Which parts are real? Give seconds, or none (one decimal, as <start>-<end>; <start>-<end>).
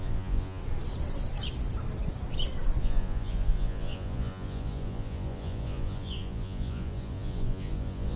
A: 0.6-2.8